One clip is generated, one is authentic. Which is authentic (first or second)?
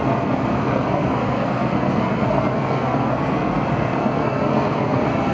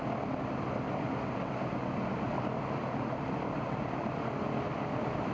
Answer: second